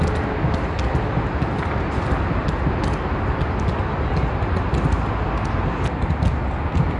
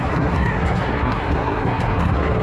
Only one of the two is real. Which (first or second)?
first